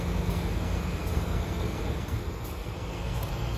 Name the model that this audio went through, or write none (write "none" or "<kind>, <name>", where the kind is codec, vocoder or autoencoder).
codec, SNAC